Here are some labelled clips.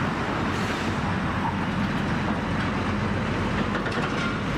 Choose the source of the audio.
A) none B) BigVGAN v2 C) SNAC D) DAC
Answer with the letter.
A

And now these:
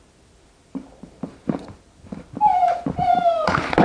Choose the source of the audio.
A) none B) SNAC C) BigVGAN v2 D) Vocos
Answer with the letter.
C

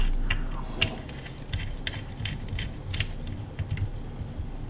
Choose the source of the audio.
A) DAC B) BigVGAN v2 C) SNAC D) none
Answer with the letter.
D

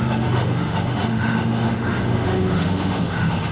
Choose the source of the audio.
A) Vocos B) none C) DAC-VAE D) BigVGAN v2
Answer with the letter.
C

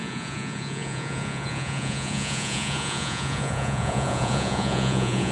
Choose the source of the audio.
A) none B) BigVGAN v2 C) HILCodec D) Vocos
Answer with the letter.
D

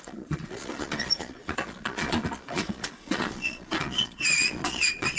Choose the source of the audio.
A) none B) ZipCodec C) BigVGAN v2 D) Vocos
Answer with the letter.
D